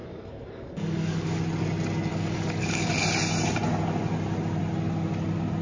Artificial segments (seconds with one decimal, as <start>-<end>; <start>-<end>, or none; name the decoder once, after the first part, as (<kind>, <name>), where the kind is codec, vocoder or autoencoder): 0.0-1.4 (codec, DAC); 2.1-2.9